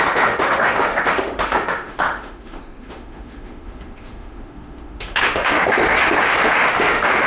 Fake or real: fake